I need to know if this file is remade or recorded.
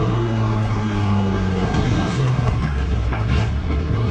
remade